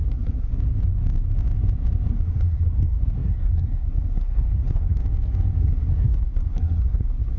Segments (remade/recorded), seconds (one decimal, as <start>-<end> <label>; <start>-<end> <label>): 0.0-0.5 remade; 0.5-2.1 recorded; 2.1-5.0 remade; 5.0-5.6 recorded; 5.6-7.4 remade